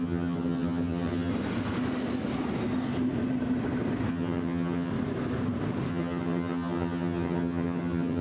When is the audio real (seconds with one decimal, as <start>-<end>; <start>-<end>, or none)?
1.3-4.1; 4.9-5.9